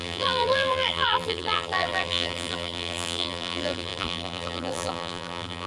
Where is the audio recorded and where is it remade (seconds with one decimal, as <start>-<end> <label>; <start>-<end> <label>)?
0.0-5.7 remade